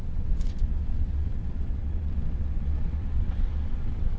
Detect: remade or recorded remade